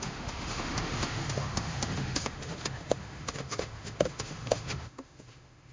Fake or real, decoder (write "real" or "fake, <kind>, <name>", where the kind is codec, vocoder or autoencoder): fake, autoencoder, DAC-VAE